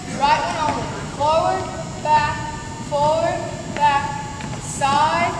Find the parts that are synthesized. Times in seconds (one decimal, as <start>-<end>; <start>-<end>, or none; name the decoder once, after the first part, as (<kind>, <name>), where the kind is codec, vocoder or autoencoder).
0.7-1.2 (autoencoder, DAC-VAE)